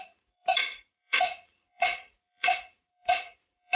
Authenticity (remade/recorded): remade